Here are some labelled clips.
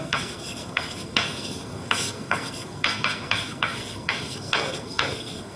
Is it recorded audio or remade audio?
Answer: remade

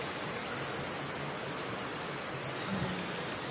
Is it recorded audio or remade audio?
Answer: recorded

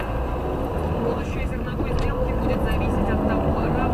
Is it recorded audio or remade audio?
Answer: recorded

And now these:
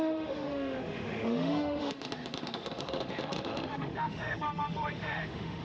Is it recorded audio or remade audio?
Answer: remade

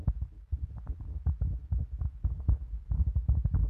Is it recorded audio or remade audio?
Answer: recorded